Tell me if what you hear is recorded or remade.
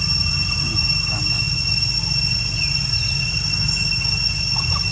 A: recorded